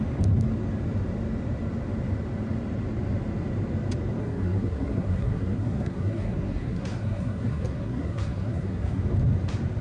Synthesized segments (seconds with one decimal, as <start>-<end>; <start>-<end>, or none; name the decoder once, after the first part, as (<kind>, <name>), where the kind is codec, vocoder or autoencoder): 4.2-9.0 (codec, SNAC)